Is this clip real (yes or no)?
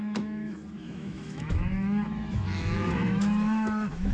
no